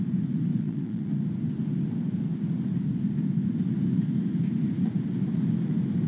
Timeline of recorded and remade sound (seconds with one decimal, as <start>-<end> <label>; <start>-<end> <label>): 0.0-0.5 recorded; 0.5-1.2 remade; 1.2-6.1 recorded